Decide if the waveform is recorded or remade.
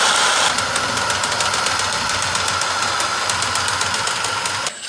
recorded